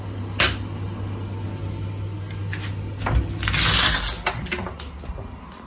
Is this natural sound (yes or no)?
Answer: yes